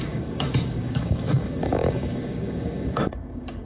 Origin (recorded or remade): remade